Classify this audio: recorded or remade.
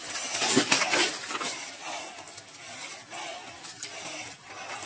recorded